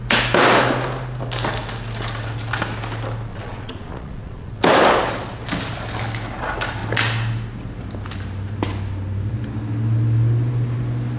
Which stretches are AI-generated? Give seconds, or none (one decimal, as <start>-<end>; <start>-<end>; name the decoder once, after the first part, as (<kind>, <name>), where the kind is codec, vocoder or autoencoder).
3.3-4.6 (vocoder, Vocos)